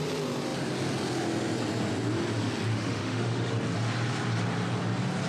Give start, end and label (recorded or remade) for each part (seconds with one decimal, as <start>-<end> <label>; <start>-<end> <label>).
0.0-2.7 recorded; 2.7-3.5 remade; 3.5-5.3 recorded